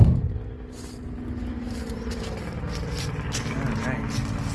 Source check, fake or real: real